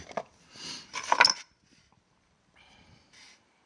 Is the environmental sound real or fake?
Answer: real